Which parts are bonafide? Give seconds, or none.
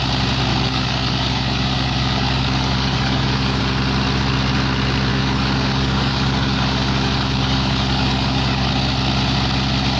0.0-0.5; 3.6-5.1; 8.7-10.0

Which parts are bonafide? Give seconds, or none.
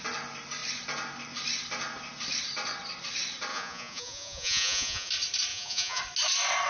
0.0-3.5; 5.1-5.5; 6.0-6.7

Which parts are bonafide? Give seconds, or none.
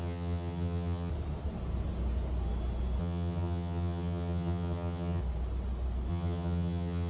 1.1-3.0; 5.2-6.1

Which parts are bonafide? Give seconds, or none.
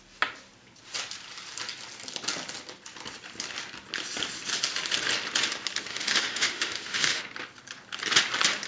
0.0-5.9; 7.2-8.7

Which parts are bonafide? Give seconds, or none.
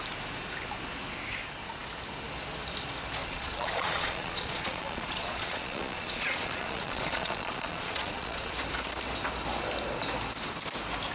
0.0-3.2; 8.5-11.1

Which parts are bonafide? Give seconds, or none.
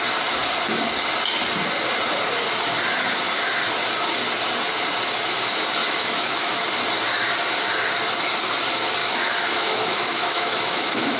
0.0-5.8; 6.6-9.0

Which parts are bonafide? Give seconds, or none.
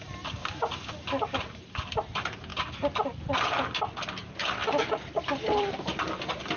0.0-4.6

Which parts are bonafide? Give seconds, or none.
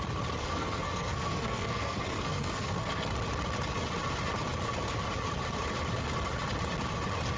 0.0-0.4; 3.1-7.4